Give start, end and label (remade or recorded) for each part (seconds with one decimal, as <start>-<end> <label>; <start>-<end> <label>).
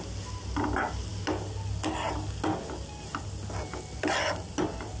0.0-5.0 recorded